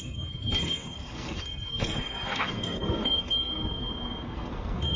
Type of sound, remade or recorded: remade